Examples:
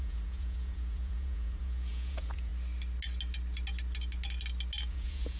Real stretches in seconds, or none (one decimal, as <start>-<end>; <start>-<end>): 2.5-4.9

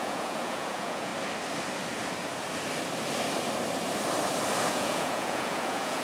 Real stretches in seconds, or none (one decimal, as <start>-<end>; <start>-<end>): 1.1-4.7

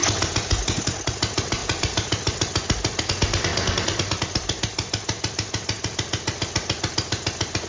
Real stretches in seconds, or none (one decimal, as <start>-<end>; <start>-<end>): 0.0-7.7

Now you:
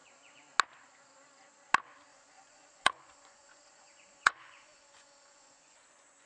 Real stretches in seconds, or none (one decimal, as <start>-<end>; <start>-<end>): 0.0-2.1

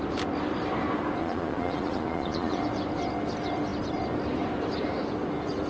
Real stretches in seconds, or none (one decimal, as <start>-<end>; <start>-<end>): 0.0-1.2; 2.6-5.7

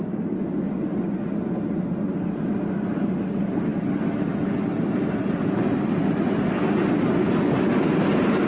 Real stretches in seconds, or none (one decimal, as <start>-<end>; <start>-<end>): 0.0-8.5

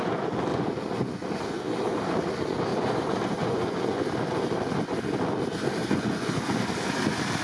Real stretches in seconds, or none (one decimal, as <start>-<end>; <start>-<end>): 0.0-0.5; 1.6-2.7; 4.0-5.8; 6.4-7.4